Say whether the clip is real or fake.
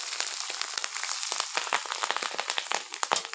real